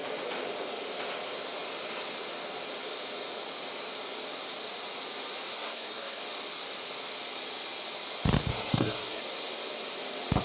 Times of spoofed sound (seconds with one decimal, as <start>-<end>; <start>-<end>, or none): 5.5-6.2; 8.5-9.2